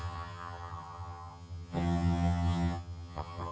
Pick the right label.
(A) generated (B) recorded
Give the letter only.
A